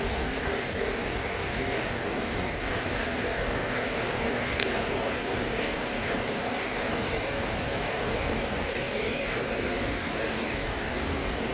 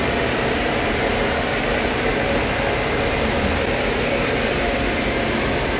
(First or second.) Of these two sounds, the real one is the second